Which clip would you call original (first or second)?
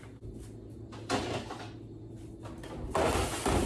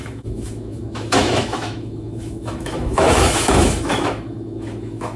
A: first